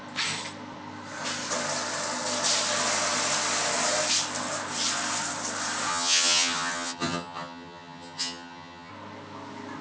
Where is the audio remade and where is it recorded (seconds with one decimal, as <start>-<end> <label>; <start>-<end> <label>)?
0.0-5.9 recorded; 5.9-8.9 remade; 8.9-9.8 recorded